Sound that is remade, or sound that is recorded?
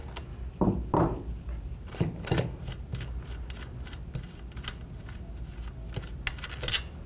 recorded